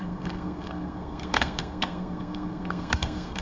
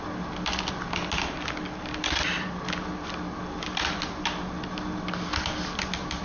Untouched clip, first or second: second